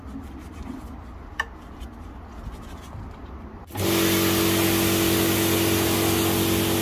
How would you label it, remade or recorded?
recorded